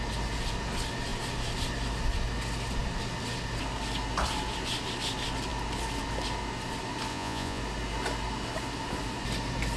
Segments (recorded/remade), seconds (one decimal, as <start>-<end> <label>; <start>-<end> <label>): 0.0-7.1 recorded; 7.1-7.6 remade; 7.6-9.8 recorded

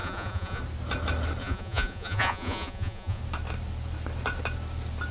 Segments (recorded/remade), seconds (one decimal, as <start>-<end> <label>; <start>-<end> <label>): 0.0-0.6 remade; 0.6-1.4 recorded; 1.4-3.2 remade; 3.2-5.1 recorded

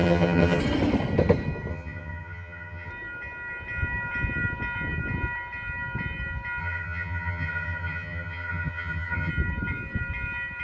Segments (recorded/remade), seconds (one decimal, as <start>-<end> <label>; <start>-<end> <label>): 0.0-0.6 remade; 0.6-1.7 recorded; 1.7-2.9 remade; 2.9-6.6 recorded; 6.6-9.3 remade; 9.3-10.6 recorded

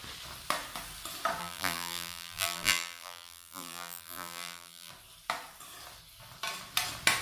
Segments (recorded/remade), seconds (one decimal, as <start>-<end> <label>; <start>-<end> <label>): 0.0-1.4 recorded; 1.4-4.9 remade; 4.9-7.2 recorded

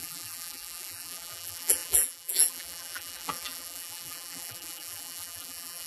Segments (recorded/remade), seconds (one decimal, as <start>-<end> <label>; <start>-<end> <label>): 0.0-5.9 remade

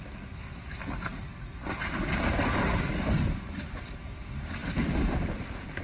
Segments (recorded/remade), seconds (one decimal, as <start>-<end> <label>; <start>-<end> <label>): 0.0-4.6 recorded; 4.6-5.8 remade

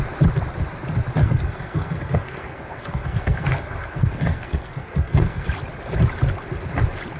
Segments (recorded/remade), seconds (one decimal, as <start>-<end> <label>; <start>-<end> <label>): 0.0-1.2 recorded; 1.2-5.5 remade; 5.5-7.2 recorded

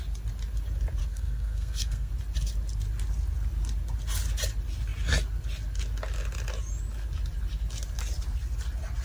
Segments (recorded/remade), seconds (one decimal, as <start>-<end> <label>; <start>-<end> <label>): 0.0-1.0 recorded; 1.0-2.1 remade; 2.1-9.0 recorded